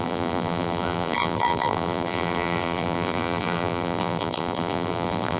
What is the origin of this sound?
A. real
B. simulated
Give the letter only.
B